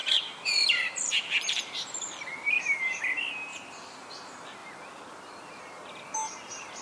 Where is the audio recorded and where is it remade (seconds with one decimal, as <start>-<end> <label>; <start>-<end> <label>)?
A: 0.0-3.0 remade; 3.0-3.5 recorded; 3.5-4.1 remade; 4.1-6.8 recorded